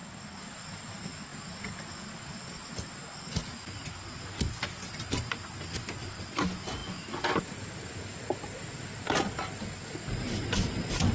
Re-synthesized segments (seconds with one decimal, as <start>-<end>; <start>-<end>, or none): none